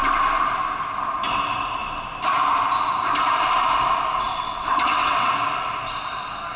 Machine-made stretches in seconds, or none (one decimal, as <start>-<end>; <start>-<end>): 4.3-5.3